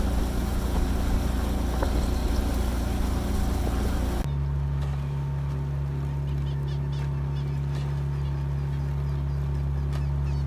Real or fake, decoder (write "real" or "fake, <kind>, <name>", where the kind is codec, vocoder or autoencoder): real